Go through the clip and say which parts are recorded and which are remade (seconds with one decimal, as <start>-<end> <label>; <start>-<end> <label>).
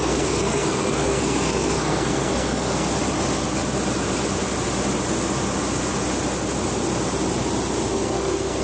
0.0-2.9 remade; 2.9-7.9 recorded; 7.9-8.6 remade